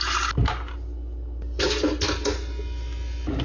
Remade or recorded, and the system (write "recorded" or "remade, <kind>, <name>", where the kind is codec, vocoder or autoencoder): recorded